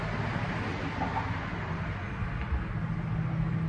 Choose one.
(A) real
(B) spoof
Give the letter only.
A